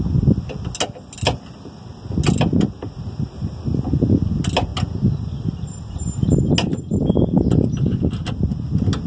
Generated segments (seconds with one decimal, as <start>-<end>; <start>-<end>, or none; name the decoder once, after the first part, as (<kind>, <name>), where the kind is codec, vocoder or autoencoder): none